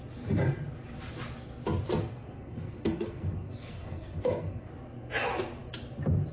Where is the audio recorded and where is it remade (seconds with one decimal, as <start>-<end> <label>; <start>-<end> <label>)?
0.0-2.0 recorded; 2.0-4.7 remade; 4.7-6.3 recorded

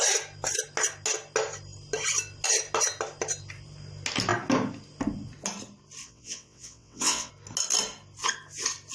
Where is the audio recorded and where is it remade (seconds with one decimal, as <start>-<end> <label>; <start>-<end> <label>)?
0.0-6.0 recorded; 6.0-7.3 remade; 7.3-8.9 recorded

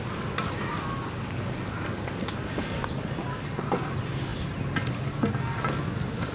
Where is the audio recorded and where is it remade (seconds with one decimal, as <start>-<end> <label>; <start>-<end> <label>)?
0.0-6.3 recorded

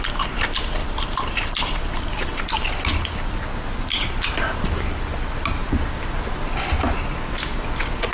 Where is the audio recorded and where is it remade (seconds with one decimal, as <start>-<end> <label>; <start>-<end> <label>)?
0.0-0.8 recorded; 0.8-2.4 remade; 2.4-8.1 recorded

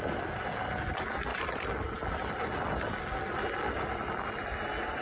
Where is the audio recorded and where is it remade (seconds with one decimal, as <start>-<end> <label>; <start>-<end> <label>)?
0.0-5.0 recorded